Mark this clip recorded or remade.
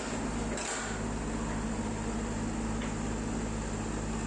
recorded